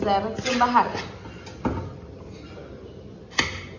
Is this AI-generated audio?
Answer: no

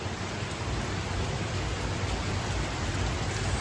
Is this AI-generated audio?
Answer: no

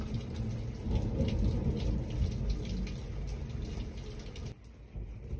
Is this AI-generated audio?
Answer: no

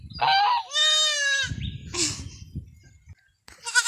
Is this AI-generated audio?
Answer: no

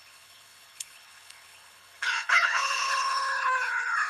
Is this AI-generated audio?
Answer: yes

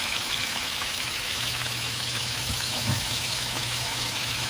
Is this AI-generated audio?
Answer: yes